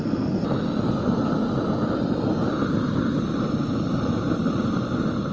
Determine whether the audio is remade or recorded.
recorded